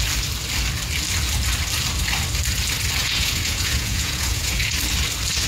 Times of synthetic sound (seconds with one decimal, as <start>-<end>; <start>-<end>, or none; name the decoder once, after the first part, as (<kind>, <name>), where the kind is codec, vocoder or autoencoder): 3.0-4.6 (vocoder, Vocos)